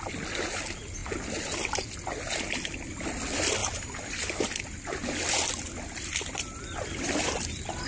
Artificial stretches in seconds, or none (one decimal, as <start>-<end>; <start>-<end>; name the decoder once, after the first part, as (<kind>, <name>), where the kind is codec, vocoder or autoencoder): none